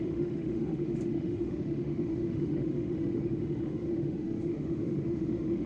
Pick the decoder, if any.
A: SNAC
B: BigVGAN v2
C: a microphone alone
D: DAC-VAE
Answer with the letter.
D